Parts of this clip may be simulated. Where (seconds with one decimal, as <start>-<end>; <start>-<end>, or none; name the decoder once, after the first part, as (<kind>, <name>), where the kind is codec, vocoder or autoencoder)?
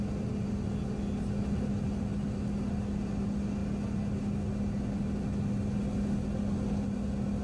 none